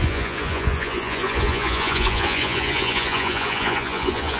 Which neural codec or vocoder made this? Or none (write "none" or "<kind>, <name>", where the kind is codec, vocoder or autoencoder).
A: vocoder, Vocos